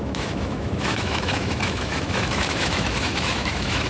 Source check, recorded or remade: remade